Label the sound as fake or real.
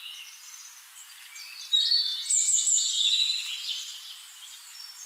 real